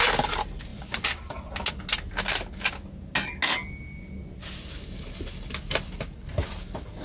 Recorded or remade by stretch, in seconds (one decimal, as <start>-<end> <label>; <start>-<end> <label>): 0.0-7.0 recorded